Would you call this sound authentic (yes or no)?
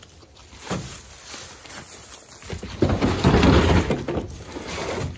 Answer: yes